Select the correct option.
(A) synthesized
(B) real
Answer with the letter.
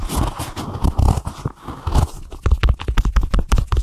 B